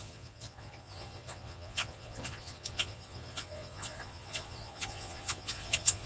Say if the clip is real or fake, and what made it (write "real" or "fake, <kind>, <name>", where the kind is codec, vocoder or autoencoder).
fake, vocoder, Vocos